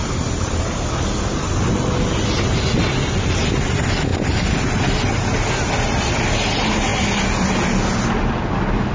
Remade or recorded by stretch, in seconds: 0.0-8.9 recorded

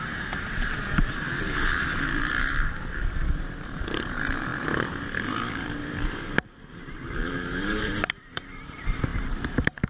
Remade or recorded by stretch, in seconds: 0.0-9.9 remade